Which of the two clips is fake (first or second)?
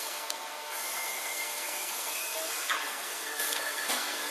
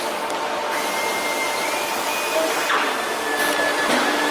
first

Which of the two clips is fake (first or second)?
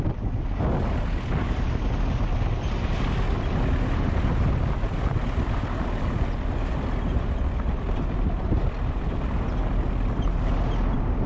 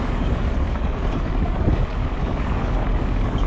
second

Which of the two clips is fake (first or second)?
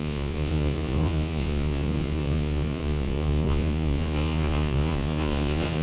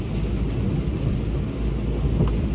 first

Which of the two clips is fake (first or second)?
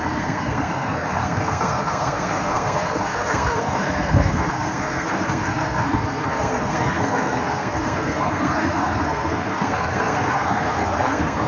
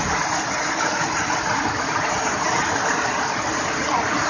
first